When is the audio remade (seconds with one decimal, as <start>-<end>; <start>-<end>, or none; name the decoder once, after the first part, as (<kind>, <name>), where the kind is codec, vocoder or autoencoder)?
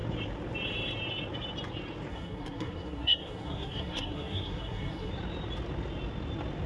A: 2.1-5.1 (codec, SNAC)